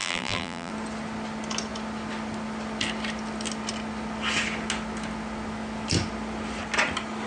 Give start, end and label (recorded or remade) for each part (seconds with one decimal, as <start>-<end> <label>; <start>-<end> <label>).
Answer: 0.0-0.7 remade; 0.7-7.3 recorded